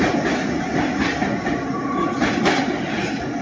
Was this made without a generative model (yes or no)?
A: yes